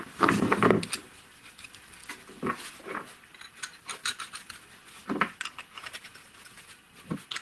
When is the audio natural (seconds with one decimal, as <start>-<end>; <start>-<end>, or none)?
0.0-7.4